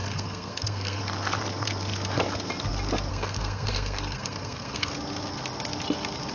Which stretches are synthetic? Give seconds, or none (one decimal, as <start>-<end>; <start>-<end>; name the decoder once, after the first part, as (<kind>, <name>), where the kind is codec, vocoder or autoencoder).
0.0-1.0 (codec, SNAC); 3.1-4.9